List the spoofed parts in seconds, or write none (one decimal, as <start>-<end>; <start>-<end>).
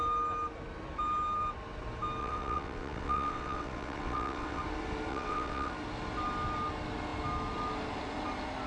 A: 2.2-4.6; 5.1-5.7